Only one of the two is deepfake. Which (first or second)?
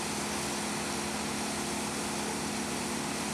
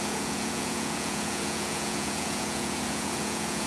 second